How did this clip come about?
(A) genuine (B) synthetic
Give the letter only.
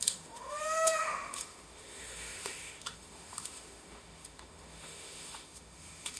B